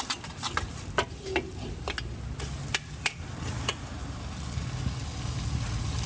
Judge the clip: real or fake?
real